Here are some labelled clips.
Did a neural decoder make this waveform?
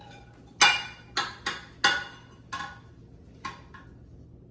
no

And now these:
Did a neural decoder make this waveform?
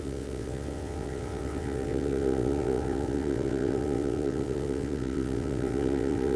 yes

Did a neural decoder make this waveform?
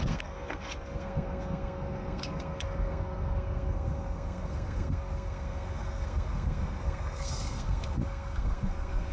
yes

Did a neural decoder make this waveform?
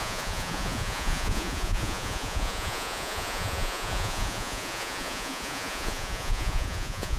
yes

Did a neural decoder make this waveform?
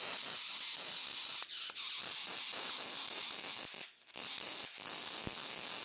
no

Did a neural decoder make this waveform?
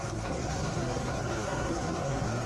yes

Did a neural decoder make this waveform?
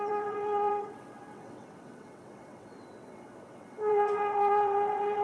yes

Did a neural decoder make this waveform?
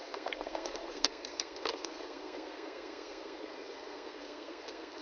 yes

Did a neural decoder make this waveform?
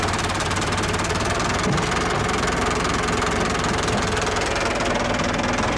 no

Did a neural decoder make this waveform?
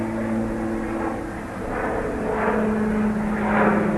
no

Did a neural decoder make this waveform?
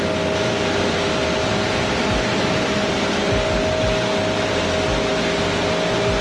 no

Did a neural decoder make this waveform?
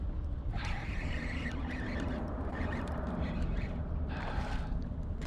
yes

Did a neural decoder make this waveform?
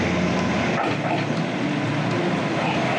no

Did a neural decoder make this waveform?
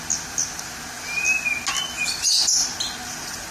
no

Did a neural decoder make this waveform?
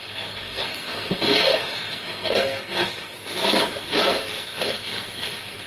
yes